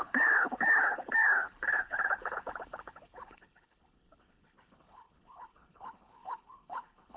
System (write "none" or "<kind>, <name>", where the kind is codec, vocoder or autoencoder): codec, HILCodec